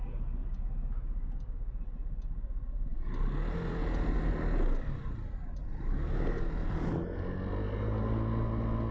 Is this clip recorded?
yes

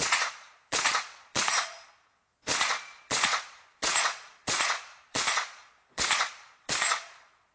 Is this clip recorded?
no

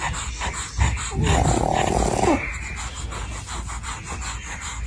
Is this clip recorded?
yes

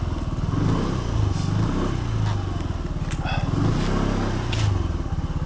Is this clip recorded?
yes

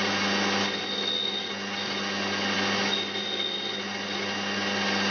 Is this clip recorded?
yes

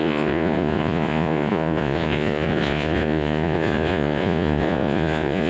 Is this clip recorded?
no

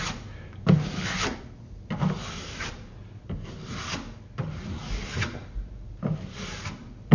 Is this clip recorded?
yes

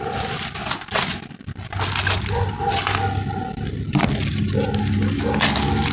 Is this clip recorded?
yes